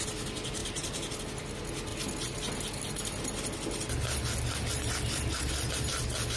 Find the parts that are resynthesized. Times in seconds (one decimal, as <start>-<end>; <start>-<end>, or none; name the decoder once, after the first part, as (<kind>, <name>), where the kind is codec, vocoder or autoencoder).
0.6-1.2 (vocoder, BigVGAN v2)